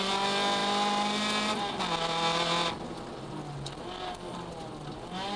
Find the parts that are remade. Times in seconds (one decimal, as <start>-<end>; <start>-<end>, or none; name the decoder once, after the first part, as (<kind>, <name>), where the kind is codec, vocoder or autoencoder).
none